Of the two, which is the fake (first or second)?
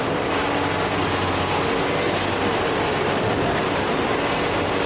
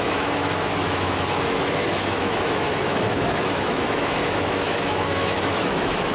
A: second